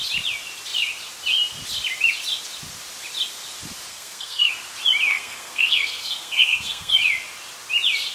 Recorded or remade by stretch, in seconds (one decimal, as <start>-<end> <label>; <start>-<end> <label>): 0.0-3.9 recorded; 3.9-4.5 remade; 4.5-5.1 recorded; 5.1-7.0 remade; 7.0-8.1 recorded